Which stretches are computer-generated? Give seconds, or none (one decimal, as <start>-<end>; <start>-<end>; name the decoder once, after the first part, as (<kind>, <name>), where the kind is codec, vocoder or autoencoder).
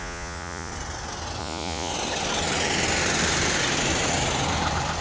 0.0-0.7 (vocoder, Vocos); 1.4-1.9